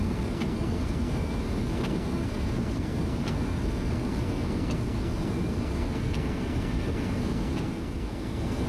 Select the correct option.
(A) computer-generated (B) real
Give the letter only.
A